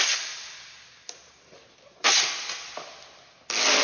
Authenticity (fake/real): real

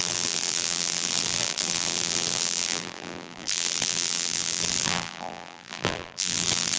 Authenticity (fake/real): fake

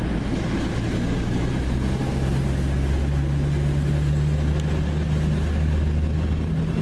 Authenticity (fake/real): real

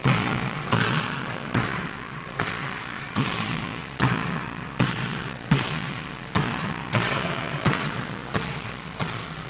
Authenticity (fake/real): fake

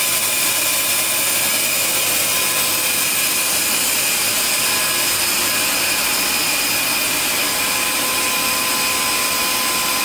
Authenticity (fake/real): real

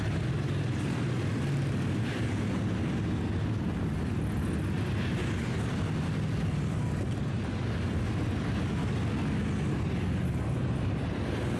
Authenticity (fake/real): real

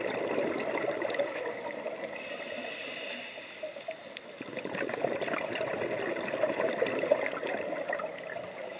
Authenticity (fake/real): real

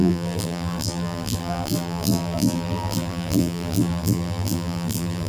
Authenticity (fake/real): fake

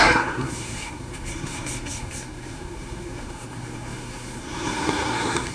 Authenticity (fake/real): fake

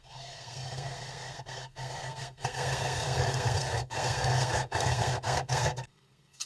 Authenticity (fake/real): fake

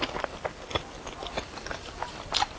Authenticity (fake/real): real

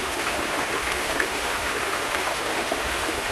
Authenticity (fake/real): fake